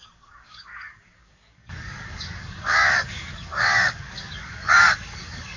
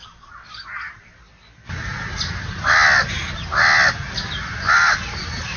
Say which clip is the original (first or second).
second